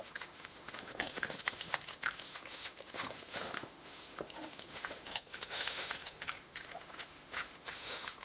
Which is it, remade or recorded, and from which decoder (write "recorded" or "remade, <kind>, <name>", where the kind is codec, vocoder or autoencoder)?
remade, autoencoder, DAC-VAE